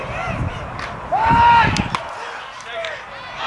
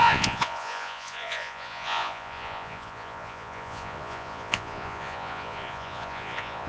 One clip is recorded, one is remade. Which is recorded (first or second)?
first